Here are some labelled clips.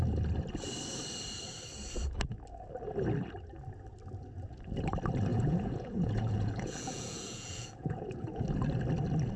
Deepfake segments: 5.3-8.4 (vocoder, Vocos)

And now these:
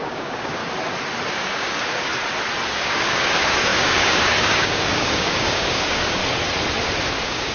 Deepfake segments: 0.0-0.6 (codec, DAC); 1.3-2.1; 2.7-6.2; 7.1-7.5

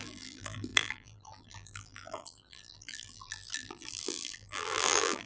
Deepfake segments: 0.0-5.3 (vocoder, BigVGAN v2)

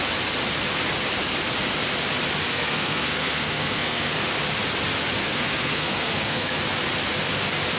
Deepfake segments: 2.4-4.1 (codec, SNAC); 5.2-6.6

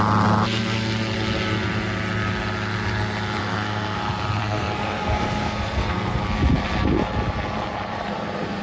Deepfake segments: 3.4-4.0 (codec, SNAC); 4.4-6.2